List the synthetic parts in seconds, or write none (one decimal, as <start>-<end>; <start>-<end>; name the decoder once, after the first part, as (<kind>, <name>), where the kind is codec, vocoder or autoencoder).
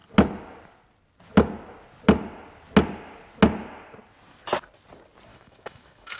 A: 5.3-6.2 (autoencoder, DAC-VAE)